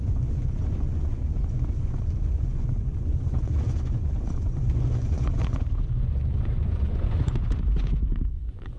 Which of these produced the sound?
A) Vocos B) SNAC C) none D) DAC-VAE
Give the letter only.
A